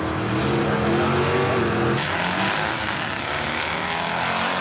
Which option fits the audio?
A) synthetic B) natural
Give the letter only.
B